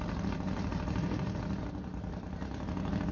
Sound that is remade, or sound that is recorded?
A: recorded